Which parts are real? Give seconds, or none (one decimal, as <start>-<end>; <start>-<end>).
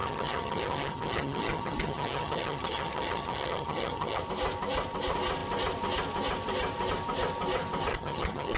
4.2-7.9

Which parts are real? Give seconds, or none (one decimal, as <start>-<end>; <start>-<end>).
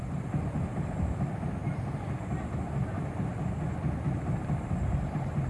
0.0-5.5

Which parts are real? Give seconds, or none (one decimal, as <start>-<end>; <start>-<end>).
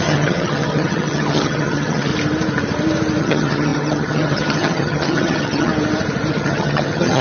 2.1-3.2; 5.7-6.3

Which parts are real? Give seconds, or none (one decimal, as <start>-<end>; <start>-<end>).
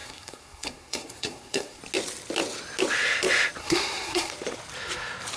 1.8-3.6; 4.3-5.4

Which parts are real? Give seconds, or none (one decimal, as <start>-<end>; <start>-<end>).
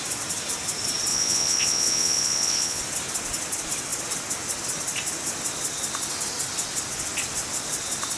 0.0-1.1; 2.8-8.2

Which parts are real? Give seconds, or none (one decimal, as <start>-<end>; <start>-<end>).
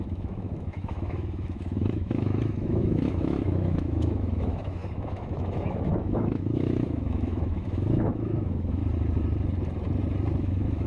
8.8-10.4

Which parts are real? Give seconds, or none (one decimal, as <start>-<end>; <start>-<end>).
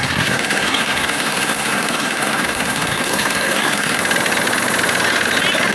4.0-5.7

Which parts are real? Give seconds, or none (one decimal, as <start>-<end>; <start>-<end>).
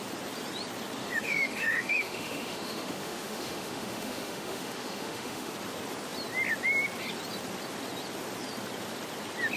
0.0-1.0; 5.5-9.6